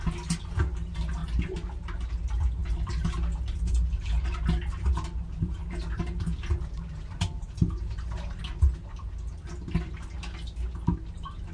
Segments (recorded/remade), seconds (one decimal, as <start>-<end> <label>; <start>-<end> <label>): 0.0-11.5 recorded